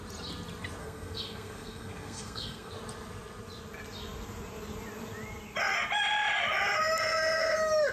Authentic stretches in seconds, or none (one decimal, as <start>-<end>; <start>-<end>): 0.0-0.8; 2.7-7.9